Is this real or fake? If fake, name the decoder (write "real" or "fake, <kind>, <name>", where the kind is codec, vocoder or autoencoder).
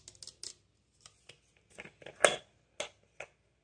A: real